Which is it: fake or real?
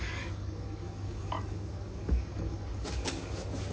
fake